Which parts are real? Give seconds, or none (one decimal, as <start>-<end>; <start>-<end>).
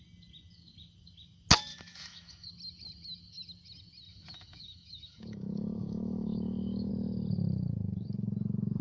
0.0-1.7; 2.5-4.1; 6.9-8.8